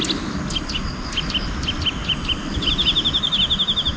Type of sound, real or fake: real